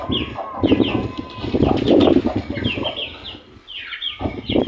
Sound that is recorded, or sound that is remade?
recorded